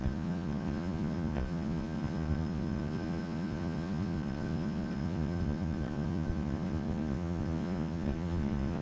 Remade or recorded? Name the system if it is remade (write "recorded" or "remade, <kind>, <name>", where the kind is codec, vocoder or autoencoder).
remade, vocoder, Vocos